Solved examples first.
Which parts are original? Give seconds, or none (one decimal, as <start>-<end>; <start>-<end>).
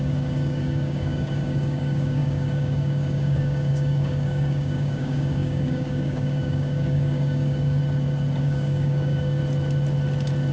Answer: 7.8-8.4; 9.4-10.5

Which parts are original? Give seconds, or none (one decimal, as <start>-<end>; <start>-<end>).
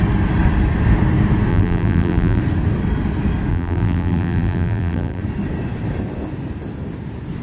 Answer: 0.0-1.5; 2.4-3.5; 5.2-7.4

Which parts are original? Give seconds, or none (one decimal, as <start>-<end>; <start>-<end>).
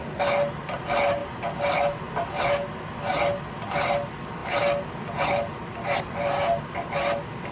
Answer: 0.0-7.5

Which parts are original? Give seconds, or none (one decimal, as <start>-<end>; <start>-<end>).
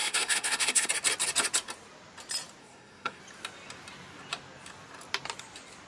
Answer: 0.9-2.6; 3.2-5.9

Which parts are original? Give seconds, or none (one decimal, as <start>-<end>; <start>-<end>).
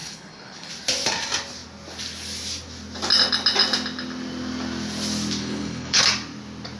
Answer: 0.7-5.4; 6.0-6.8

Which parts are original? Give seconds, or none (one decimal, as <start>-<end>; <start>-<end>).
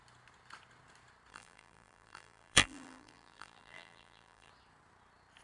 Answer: 0.0-1.3; 4.5-5.4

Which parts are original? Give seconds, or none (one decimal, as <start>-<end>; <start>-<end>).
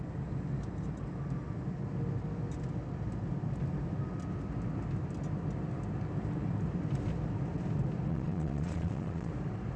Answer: 0.0-8.1; 9.3-9.8